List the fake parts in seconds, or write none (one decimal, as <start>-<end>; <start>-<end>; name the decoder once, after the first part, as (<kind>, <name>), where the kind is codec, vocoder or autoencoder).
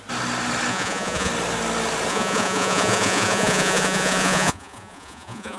0.7-1.3 (vocoder, Vocos); 2.1-5.6